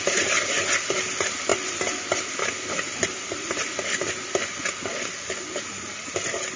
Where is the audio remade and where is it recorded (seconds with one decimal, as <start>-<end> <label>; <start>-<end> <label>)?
0.0-6.6 recorded